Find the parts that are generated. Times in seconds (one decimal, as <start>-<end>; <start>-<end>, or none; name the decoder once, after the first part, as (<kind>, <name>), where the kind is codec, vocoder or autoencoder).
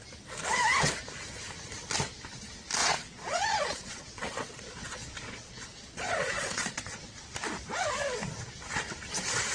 2.8-7.1 (vocoder, Vocos)